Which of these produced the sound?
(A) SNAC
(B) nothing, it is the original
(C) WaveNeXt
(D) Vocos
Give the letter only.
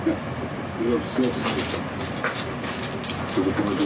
B